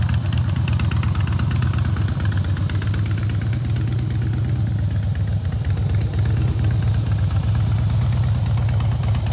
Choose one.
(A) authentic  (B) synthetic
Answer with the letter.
A